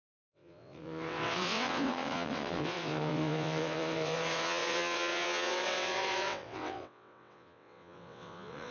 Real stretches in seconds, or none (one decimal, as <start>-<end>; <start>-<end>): none